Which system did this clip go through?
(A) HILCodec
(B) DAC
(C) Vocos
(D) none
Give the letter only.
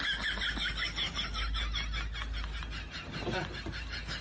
D